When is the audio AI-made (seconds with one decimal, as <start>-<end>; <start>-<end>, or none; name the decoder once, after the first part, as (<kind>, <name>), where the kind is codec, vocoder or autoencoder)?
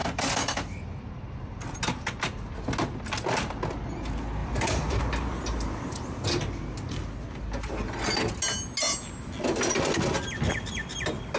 0.0-1.4 (vocoder, BigVGAN v2); 4.4-5.0